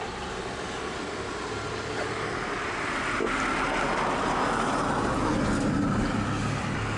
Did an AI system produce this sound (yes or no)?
no